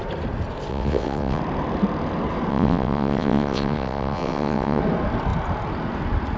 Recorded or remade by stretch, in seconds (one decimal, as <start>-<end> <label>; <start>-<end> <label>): 0.0-0.7 recorded; 0.7-1.4 remade; 1.4-2.5 recorded; 2.5-4.8 remade; 4.8-6.4 recorded